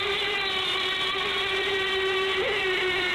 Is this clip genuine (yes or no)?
no